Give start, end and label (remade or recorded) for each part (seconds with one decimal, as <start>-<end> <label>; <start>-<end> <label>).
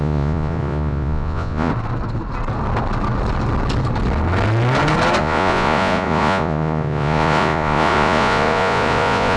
0.0-1.7 remade; 1.7-5.2 recorded; 5.2-9.4 remade